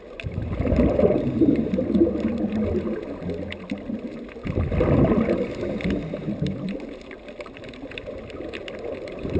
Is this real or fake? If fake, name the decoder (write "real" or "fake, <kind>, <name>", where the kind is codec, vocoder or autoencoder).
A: real